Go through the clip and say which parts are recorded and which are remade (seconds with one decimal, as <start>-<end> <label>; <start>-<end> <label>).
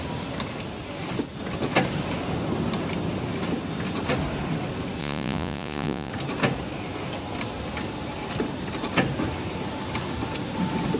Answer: 0.0-5.0 recorded; 5.0-6.1 remade; 6.1-11.0 recorded